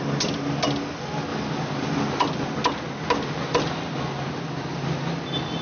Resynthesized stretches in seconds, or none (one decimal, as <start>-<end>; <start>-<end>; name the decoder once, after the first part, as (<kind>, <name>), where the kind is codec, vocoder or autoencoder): none